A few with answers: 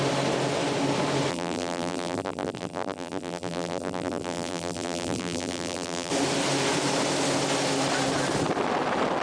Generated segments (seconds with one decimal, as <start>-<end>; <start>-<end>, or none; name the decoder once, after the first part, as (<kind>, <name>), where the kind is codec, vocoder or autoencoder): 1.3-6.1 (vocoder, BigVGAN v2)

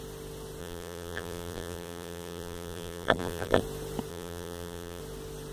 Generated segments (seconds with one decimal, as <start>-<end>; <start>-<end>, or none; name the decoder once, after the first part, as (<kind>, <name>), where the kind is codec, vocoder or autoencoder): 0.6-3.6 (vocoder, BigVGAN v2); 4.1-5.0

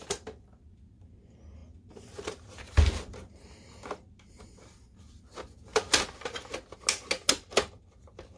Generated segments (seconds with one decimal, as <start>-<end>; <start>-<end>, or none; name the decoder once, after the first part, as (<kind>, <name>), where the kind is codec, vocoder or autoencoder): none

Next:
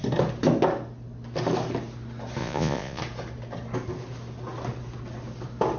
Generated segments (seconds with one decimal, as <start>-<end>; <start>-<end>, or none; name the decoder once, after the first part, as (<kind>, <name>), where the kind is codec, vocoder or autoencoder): 2.4-3.0 (vocoder, Vocos)

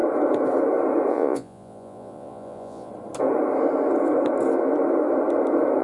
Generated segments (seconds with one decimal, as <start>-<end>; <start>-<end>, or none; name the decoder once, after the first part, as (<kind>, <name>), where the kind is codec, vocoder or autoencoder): 1.1-2.9 (vocoder, Vocos)